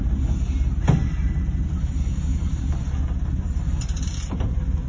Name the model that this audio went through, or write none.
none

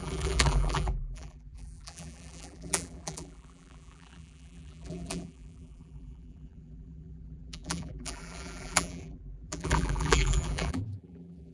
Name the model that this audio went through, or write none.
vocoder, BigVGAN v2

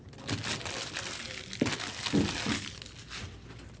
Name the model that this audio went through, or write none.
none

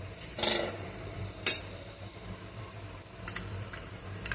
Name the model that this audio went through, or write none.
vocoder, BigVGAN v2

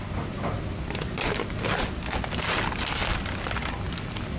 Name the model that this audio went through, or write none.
none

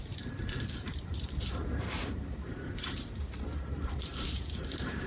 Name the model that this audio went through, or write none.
vocoder, BigVGAN v2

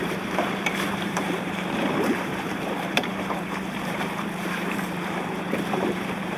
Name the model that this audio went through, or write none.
vocoder, BigVGAN v2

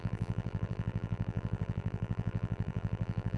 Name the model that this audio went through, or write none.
vocoder, BigVGAN v2